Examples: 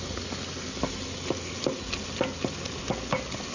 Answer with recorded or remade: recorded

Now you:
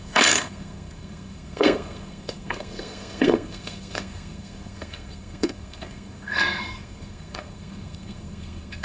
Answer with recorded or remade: remade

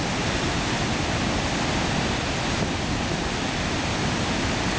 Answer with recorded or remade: recorded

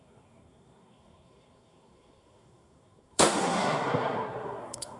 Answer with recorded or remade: remade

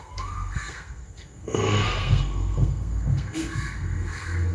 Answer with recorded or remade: remade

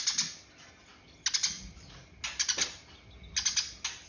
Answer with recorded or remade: recorded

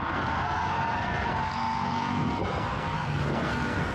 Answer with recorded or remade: remade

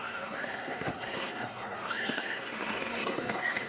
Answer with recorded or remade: remade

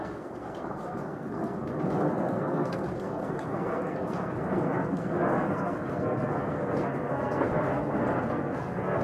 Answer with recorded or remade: remade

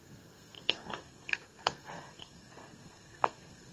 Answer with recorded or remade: remade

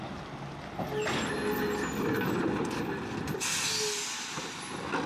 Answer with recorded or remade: recorded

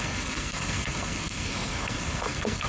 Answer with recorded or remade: remade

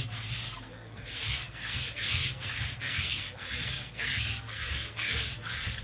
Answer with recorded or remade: remade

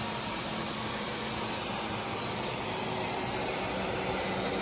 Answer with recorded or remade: recorded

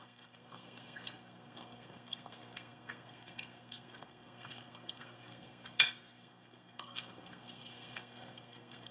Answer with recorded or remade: remade